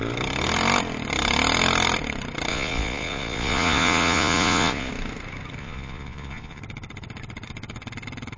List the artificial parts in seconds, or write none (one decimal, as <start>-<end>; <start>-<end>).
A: 2.5-4.9; 5.6-6.6